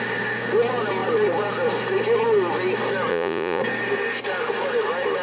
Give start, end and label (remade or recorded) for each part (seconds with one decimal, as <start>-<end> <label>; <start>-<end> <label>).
0.0-3.1 recorded; 3.1-3.6 remade; 3.6-5.2 recorded